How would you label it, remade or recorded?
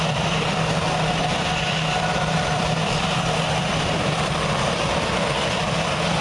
remade